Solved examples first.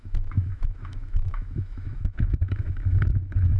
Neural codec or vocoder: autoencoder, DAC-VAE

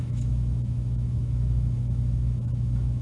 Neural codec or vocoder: autoencoder, DAC-VAE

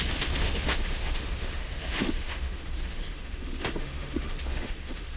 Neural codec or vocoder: autoencoder, DAC-VAE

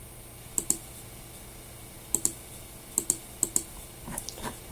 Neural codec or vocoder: none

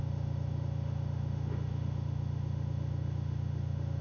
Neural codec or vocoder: autoencoder, DAC-VAE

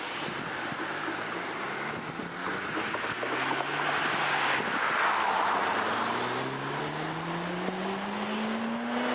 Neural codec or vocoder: none